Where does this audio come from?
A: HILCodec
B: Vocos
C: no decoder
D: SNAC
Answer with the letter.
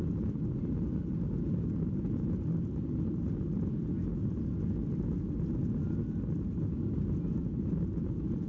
C